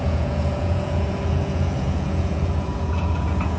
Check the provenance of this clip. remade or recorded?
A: remade